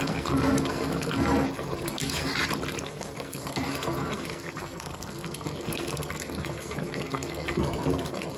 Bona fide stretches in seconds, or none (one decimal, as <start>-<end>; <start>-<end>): 2.3-2.8